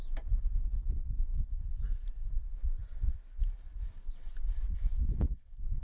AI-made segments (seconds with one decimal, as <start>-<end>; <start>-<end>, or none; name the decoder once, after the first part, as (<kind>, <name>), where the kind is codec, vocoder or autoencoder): none